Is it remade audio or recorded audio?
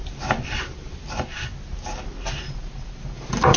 recorded